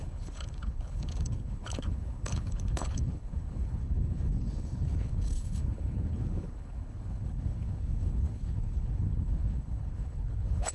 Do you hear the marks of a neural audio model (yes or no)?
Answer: yes